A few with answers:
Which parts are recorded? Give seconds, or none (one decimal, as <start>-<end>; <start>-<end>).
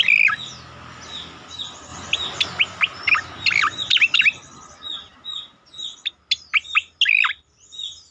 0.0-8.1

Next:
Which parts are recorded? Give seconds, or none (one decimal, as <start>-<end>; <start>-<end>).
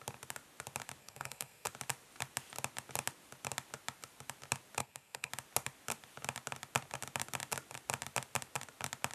0.0-1.0; 1.7-4.8; 5.3-9.1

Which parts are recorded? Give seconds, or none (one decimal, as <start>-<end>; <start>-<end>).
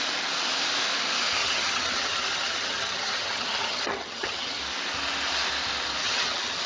0.0-1.4; 4.6-6.0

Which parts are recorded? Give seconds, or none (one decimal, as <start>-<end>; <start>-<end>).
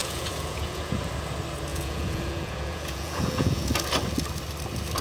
1.1-1.7; 3.7-5.0